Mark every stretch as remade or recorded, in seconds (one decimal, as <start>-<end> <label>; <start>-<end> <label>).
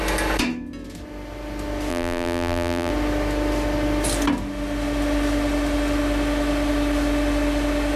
0.0-1.9 recorded; 1.9-2.9 remade; 2.9-8.0 recorded